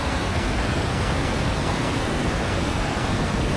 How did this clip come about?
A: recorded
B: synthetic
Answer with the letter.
B